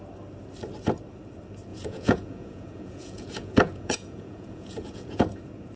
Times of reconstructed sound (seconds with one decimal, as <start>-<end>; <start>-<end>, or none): 1.7-5.2